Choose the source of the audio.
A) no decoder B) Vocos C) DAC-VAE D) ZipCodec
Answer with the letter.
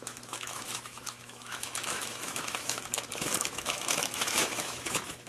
C